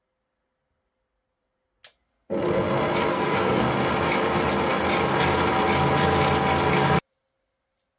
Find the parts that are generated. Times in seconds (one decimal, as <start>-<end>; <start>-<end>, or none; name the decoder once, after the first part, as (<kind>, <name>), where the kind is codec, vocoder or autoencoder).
3.1-3.6 (codec, SNAC)

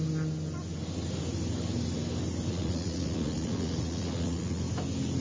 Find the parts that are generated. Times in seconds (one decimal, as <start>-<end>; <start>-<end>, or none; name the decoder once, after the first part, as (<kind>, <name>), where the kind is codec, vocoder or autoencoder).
2.5-4.6 (vocoder, Vocos)

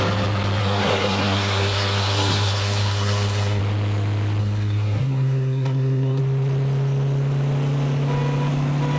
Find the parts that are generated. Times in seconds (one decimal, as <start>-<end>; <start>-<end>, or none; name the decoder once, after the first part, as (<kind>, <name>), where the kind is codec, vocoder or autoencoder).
0.6-3.6 (codec, SNAC); 4.4-6.2